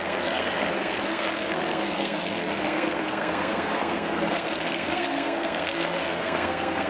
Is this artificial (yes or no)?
yes